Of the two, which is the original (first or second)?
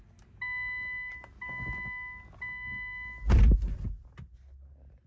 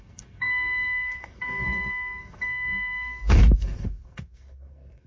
first